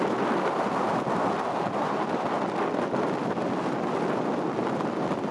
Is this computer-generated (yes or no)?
no